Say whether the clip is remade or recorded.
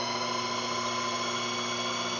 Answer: recorded